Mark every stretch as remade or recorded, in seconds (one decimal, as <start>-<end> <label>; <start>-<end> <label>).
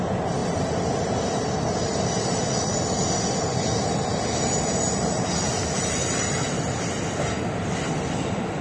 0.0-8.6 recorded